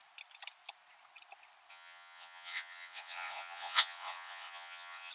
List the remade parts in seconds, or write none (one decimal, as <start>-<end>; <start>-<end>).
1.7-5.1

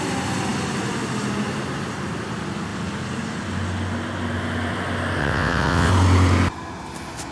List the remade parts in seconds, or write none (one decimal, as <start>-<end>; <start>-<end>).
5.2-5.9

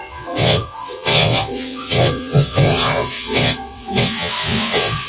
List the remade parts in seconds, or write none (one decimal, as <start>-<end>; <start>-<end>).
0.0-5.1

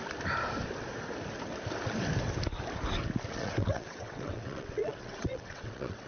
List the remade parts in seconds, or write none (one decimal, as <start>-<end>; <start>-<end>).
3.3-6.1

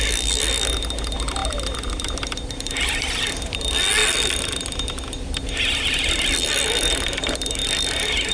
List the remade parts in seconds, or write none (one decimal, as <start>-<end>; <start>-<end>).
none

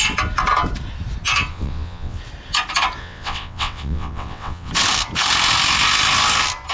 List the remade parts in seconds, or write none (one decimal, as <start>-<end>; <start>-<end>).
1.5-2.2; 3.0-4.7